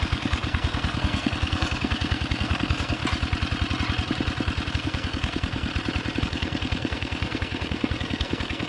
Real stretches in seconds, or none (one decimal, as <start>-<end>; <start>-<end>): 3.0-4.7; 5.7-6.2